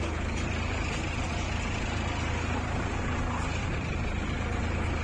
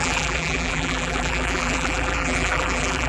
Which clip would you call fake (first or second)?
second